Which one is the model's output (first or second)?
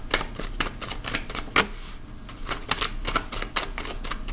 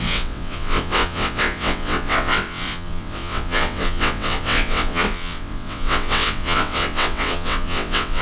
second